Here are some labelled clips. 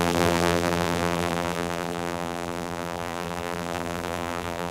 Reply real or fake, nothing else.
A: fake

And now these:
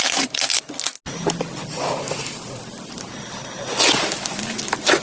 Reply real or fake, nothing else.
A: real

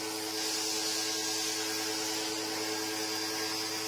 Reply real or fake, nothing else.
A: real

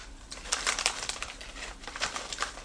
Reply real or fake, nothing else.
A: fake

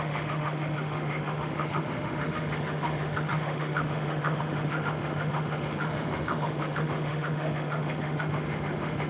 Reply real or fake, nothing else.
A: fake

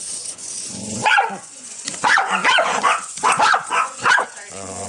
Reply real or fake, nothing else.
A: fake